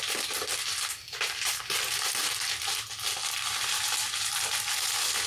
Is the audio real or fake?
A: real